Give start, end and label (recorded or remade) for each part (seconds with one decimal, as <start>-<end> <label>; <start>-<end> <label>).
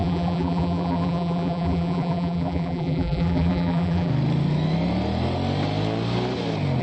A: 0.0-4.1 remade; 4.1-6.8 recorded